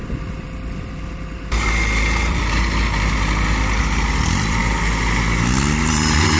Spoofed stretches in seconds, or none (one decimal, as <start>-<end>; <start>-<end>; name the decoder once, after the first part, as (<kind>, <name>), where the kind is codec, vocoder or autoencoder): 0.0-4.6 (vocoder, BigVGAN v2); 5.8-6.4